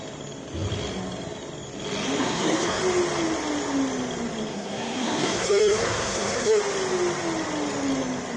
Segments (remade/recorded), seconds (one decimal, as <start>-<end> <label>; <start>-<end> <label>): 0.0-2.2 recorded; 2.2-2.8 remade; 2.8-4.5 recorded; 4.5-6.6 remade; 6.6-8.4 recorded